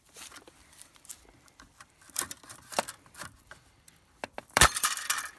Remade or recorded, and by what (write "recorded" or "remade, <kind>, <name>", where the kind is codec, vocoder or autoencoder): remade, vocoder, BigVGAN v2